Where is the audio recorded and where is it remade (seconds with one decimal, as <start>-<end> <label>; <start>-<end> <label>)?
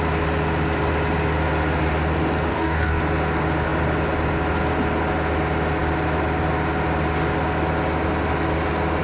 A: 0.0-2.5 recorded; 2.5-3.0 remade; 3.0-9.0 recorded